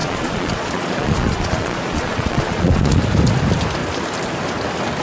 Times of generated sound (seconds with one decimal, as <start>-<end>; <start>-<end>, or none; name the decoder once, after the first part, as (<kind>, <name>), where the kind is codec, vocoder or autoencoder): 0.0-3.0 (vocoder, Vocos)